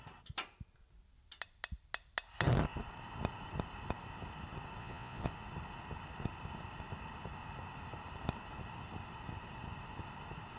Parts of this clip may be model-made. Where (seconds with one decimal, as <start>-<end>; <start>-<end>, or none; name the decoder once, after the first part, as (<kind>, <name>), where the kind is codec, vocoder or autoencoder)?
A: 4.8-5.3 (vocoder, Vocos)